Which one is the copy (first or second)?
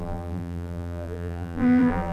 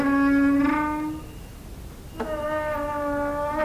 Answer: first